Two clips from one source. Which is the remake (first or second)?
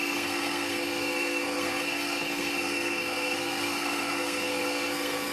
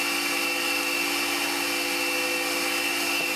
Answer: first